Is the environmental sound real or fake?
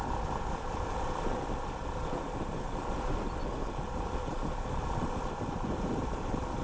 real